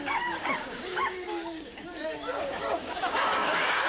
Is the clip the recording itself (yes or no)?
no